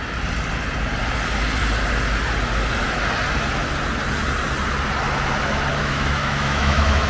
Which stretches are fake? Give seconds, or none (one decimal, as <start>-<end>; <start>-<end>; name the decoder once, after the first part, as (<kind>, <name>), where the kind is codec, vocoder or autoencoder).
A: 5.8-7.1 (autoencoder, DAC-VAE)